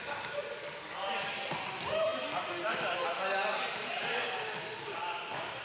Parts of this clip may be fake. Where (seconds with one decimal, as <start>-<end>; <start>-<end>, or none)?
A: 0.0-2.1; 3.3-5.6